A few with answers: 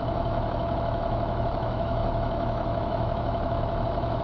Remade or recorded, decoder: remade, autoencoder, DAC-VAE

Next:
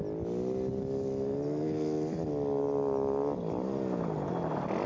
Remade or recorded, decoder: recorded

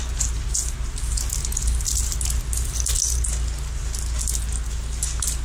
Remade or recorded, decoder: recorded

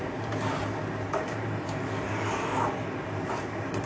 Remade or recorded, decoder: recorded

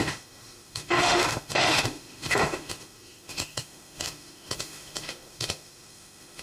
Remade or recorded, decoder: remade, autoencoder, DAC-VAE